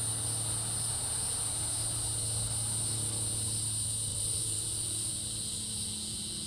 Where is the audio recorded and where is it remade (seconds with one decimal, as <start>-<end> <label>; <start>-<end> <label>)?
0.0-4.1 recorded; 4.1-5.1 remade; 5.1-6.5 recorded